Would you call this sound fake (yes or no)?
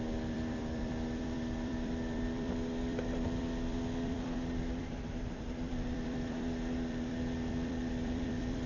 yes